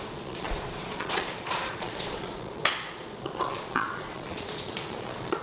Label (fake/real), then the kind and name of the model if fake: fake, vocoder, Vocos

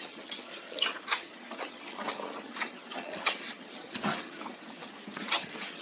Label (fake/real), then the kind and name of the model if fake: fake, vocoder, HiFi-GAN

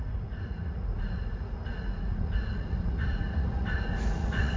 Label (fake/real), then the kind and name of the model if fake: fake, vocoder, Vocos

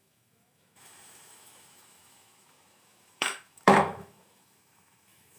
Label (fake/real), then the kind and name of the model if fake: fake, autoencoder, DAC-VAE